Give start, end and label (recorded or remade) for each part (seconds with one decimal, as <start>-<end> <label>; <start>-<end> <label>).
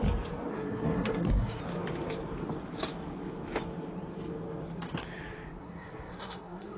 0.0-0.5 recorded; 0.5-1.6 remade; 1.6-5.6 recorded; 5.6-6.8 remade